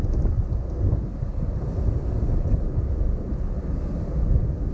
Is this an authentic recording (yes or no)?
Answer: yes